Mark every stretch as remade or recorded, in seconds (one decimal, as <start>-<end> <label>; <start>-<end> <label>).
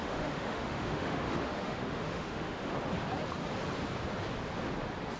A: 0.0-2.7 remade; 2.7-5.2 recorded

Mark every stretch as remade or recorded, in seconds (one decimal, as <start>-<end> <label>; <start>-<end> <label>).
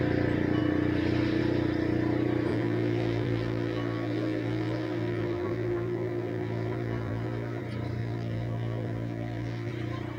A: 0.0-2.5 recorded; 2.5-7.6 remade; 7.6-8.0 recorded; 8.0-9.7 remade; 9.7-10.2 recorded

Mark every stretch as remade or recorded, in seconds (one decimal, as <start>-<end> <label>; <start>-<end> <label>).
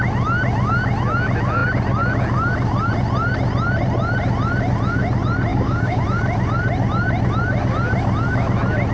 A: 0.0-5.5 recorded; 5.5-6.0 remade; 6.0-8.9 recorded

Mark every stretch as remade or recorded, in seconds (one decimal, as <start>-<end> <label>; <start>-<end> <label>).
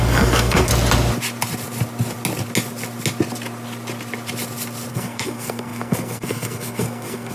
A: 0.0-0.7 remade; 0.7-4.9 recorded; 4.9-7.3 remade